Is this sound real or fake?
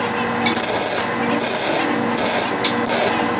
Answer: real